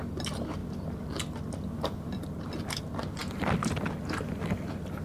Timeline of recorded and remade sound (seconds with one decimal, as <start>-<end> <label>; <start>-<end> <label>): 0.0-5.0 recorded